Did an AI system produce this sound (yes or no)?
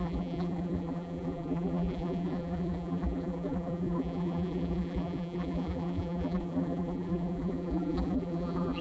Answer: yes